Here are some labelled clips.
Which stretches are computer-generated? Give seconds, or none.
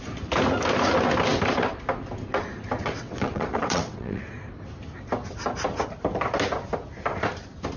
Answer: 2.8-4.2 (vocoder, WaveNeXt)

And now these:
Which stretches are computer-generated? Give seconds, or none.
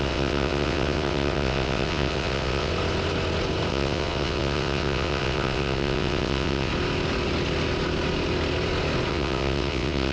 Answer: 0.0-2.7 (vocoder, WaveNeXt); 3.7-6.7; 9.1-10.1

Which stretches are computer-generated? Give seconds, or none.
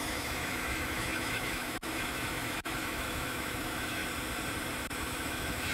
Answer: 0.0-4.0 (autoencoder, DAC-VAE); 4.9-5.7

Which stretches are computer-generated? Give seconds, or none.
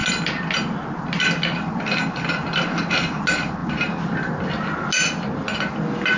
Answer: none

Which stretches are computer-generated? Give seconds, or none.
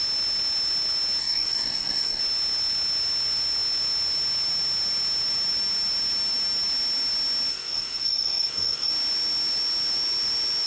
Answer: 1.2-2.2 (codec, SNAC); 7.5-8.9